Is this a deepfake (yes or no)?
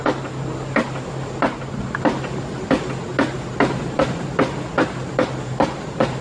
no